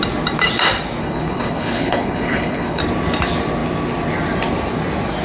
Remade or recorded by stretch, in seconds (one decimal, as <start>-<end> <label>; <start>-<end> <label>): 0.0-1.0 recorded; 1.0-2.8 remade; 2.8-5.2 recorded